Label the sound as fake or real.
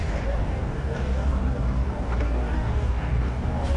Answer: fake